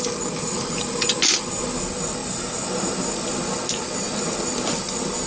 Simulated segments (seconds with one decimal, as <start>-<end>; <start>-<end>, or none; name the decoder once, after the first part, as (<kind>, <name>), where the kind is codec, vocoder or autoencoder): none